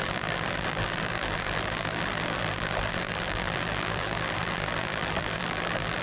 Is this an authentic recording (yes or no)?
no